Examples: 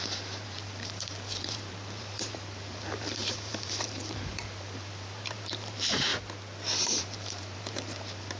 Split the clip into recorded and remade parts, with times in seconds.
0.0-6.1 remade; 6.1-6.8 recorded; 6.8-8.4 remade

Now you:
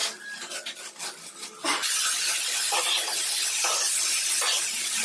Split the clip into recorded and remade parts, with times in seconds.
0.0-5.0 recorded

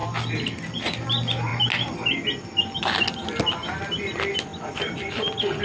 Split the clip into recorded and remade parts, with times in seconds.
0.0-5.6 recorded

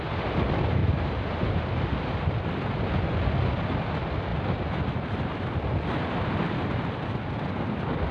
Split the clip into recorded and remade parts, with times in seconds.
0.0-0.8 recorded; 0.8-1.3 remade; 1.3-8.1 recorded

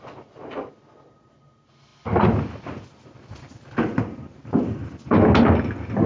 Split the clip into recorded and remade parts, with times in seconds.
0.0-6.1 recorded

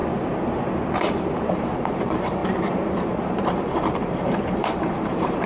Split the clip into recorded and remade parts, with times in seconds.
0.0-1.5 recorded; 1.5-5.5 remade

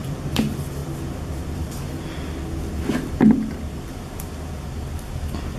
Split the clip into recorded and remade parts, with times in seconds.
0.0-5.6 recorded

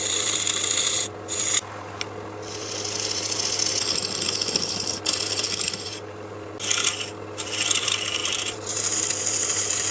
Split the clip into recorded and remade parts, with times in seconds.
0.0-8.2 recorded; 8.2-8.9 remade; 8.9-9.9 recorded